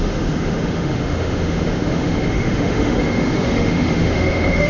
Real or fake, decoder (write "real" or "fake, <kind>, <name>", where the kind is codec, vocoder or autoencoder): fake, autoencoder, DAC-VAE